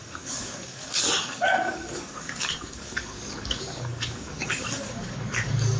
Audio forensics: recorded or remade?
remade